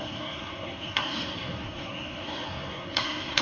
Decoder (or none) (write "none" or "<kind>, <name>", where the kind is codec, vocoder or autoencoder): codec, SNAC